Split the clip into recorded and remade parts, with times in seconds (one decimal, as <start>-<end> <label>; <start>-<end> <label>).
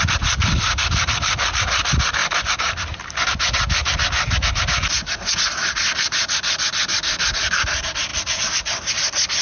0.0-2.2 recorded; 2.2-3.4 remade; 3.4-8.1 recorded; 8.1-8.9 remade; 8.9-9.4 recorded